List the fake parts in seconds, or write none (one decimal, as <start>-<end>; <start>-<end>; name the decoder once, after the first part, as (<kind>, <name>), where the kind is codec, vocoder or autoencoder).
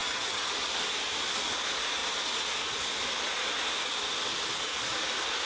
0.0-0.5 (vocoder, HiFi-GAN)